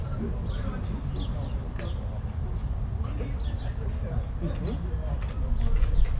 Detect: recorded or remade recorded